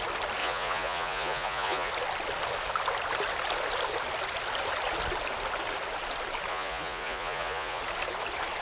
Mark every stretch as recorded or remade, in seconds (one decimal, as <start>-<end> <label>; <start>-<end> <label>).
0.0-0.4 recorded; 0.4-1.9 remade; 1.9-6.5 recorded; 6.5-7.8 remade; 7.8-8.6 recorded